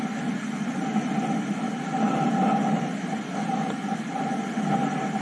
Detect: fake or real real